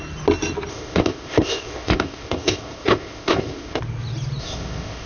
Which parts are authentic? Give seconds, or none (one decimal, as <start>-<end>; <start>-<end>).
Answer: 0.0-0.7; 3.8-4.4